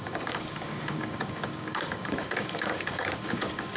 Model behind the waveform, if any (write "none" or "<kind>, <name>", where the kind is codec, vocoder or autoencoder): codec, DAC